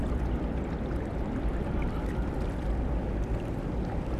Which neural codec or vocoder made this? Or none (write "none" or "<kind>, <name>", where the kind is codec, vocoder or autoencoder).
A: none